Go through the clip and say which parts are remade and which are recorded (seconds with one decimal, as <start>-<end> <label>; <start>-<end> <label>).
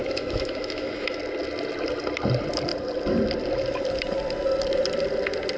0.0-1.2 remade; 1.2-5.6 recorded